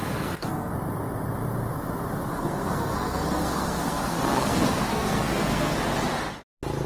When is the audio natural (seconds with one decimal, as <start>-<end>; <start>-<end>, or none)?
0.7-2.3; 5.8-6.9